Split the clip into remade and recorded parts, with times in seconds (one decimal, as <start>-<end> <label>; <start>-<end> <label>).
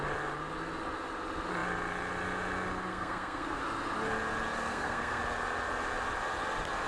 0.0-2.9 recorded; 2.9-3.6 remade; 3.6-4.7 recorded; 4.7-5.2 remade; 5.2-6.9 recorded